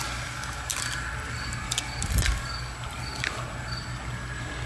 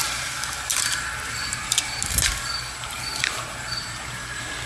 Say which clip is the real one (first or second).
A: first